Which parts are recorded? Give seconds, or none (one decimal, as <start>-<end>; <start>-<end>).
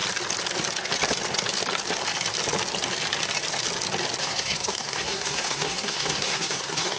0.0-4.2